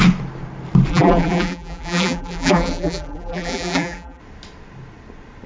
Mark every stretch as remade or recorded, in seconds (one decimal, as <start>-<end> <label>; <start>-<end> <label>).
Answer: 0.0-0.9 recorded; 0.9-4.2 remade; 4.2-5.5 recorded